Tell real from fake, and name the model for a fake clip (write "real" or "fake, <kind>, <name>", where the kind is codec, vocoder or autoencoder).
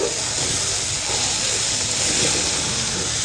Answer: real